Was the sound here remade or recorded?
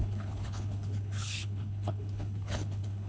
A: remade